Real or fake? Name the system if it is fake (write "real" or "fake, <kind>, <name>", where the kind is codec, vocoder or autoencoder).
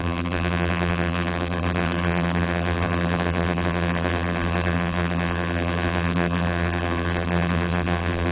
fake, vocoder, BigVGAN v2